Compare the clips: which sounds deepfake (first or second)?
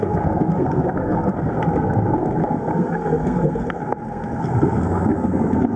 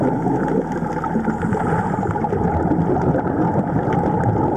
first